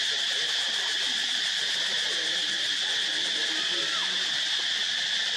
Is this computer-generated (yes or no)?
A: no